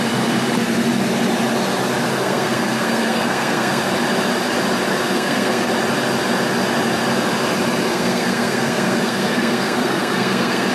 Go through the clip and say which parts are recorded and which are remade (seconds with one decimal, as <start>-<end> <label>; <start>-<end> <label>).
0.0-2.1 recorded; 2.1-3.8 remade; 3.8-5.0 recorded; 5.0-5.7 remade; 5.7-7.9 recorded; 7.9-10.7 remade

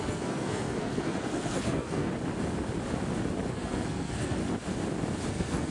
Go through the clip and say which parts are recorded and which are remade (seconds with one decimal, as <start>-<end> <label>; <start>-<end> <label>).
0.0-2.1 remade; 2.1-3.5 recorded; 3.5-4.4 remade; 4.4-5.3 recorded; 5.3-5.7 remade

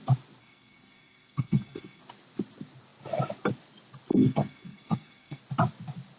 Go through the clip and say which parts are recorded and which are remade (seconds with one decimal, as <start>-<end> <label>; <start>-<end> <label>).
0.0-0.4 recorded; 0.4-2.0 remade; 2.0-4.1 recorded; 4.1-5.4 remade; 5.4-6.2 recorded

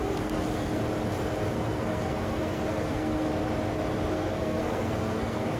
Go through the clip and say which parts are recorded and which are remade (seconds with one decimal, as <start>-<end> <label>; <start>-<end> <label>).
0.0-0.8 remade; 0.8-1.5 recorded; 1.5-3.3 remade; 3.3-4.1 recorded; 4.1-5.6 remade